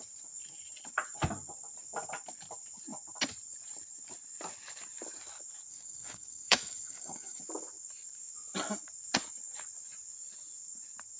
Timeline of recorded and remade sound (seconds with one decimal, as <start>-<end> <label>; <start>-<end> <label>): 0.0-5.7 recorded; 5.7-7.4 remade; 7.4-11.2 recorded